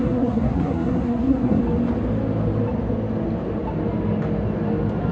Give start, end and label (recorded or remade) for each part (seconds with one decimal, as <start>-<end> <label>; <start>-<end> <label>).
0.0-1.6 remade; 1.6-5.1 recorded